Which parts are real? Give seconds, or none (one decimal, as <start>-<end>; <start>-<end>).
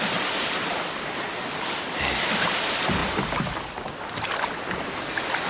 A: 0.0-5.5